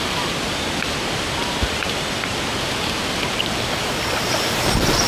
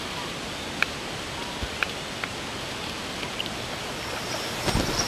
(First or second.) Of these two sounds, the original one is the second